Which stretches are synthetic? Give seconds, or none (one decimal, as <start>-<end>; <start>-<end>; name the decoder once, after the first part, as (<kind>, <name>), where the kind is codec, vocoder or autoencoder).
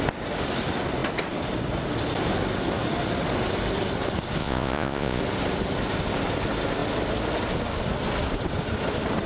4.4-5.2 (vocoder, Vocos)